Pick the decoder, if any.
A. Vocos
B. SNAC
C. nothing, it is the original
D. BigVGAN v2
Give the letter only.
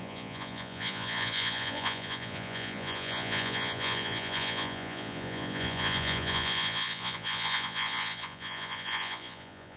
A